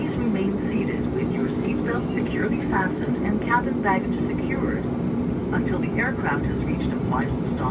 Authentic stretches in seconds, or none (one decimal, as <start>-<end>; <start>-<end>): 0.0-1.4; 3.2-5.4; 6.0-7.7